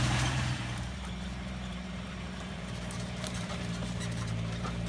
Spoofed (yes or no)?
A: yes